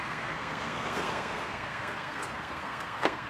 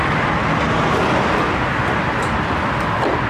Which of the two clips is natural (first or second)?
second